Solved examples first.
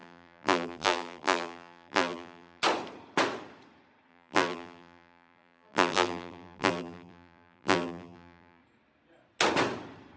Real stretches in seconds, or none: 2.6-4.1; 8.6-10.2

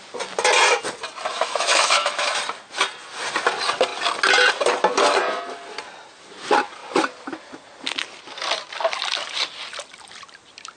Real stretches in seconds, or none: 0.0-1.3; 2.4-10.8

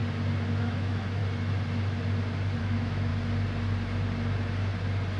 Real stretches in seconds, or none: 0.0-0.6; 1.2-2.6; 3.1-5.2